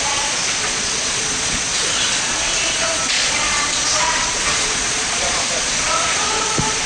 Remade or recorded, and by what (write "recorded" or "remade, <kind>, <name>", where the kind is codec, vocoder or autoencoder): remade, vocoder, Vocos